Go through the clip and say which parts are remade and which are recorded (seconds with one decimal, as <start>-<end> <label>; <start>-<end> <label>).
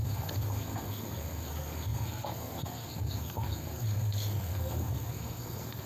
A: 0.0-5.9 remade